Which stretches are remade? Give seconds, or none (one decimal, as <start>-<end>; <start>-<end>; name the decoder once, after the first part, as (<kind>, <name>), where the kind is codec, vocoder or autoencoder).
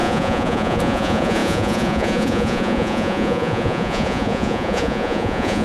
0.0-5.6 (vocoder, Vocos)